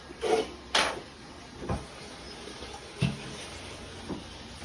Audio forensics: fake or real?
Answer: real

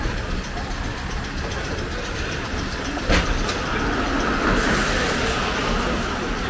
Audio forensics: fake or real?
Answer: real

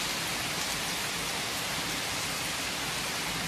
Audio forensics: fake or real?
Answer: real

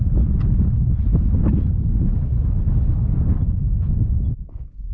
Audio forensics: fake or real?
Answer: real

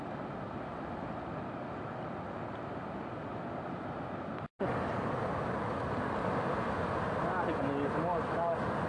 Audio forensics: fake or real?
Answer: real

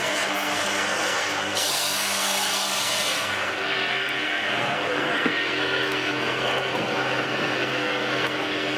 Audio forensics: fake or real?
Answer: fake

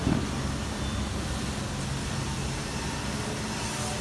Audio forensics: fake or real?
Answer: real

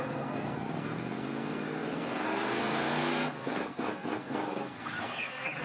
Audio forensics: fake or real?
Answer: fake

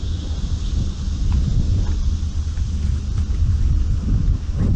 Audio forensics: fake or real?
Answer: real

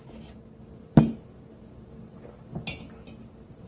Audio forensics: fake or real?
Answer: real